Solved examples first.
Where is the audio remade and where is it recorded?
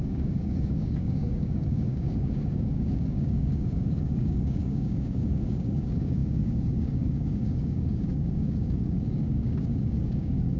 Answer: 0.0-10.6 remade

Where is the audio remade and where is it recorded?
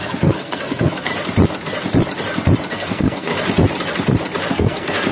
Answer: 0.0-1.1 remade; 1.1-2.7 recorded; 2.7-3.3 remade; 3.3-4.5 recorded; 4.5-5.1 remade